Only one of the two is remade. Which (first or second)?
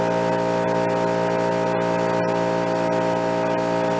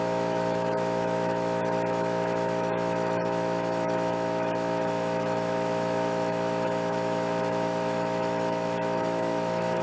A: second